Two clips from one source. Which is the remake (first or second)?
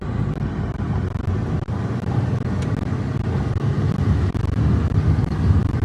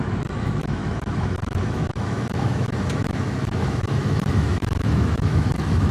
second